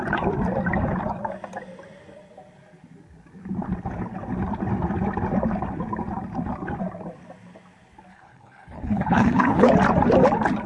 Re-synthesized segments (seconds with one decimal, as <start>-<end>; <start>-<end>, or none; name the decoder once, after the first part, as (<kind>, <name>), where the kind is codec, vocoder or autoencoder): 8.1-9.7 (codec, HILCodec)